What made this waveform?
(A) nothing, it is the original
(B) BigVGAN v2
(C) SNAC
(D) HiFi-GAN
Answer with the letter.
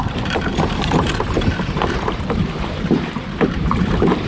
B